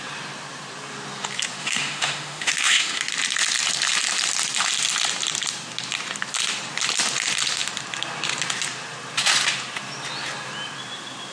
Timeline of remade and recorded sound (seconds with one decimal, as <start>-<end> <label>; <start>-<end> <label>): 0.0-1.6 recorded; 1.6-3.0 remade; 3.0-11.3 recorded